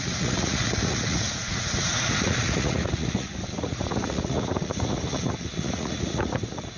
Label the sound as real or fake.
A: fake